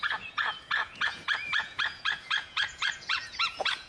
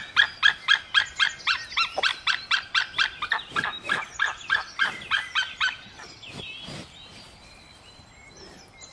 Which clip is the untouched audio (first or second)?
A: second